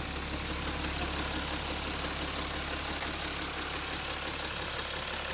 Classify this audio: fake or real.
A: real